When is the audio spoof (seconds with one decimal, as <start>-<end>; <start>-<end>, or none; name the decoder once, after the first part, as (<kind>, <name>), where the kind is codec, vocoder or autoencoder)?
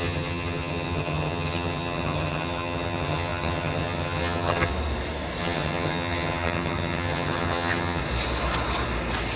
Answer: 0.0-4.7 (vocoder, HiFi-GAN); 5.4-8.0